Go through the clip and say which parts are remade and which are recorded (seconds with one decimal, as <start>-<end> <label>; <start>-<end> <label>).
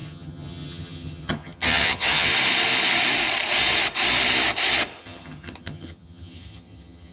0.0-2.3 remade; 2.3-5.0 recorded; 5.0-7.1 remade